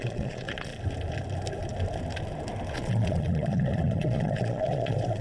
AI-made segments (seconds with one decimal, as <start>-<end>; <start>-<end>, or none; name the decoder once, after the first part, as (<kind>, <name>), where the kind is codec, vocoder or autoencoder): 0.0-0.7 (vocoder, Vocos); 2.7-5.2